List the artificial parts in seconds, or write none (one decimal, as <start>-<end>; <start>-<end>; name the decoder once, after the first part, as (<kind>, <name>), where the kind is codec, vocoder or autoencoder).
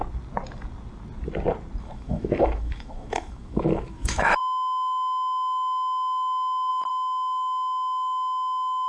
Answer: 1.8-8.9 (autoencoder, DAC-VAE)